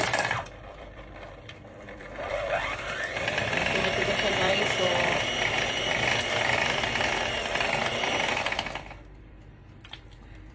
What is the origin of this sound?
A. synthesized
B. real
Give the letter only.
A